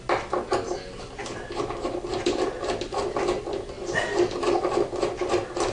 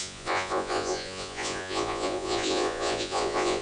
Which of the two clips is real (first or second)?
first